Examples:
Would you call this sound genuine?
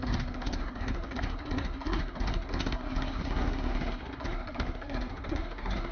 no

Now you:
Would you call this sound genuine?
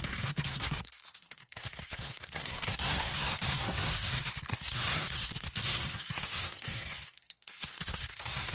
no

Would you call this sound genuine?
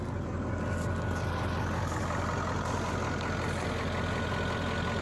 yes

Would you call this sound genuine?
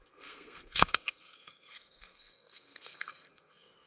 no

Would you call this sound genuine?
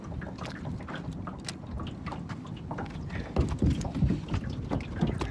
yes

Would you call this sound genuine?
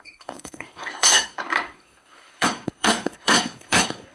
no